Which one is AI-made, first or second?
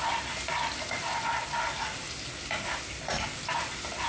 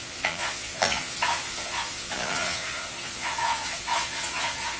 second